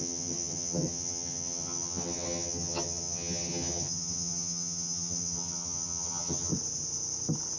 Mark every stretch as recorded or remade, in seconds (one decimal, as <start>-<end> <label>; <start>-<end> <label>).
0.0-6.5 remade; 6.5-7.6 recorded